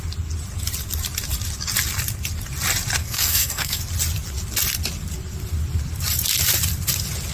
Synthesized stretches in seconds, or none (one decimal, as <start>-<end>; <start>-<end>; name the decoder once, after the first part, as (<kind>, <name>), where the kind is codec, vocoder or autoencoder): 3.0-3.8 (codec, SNAC)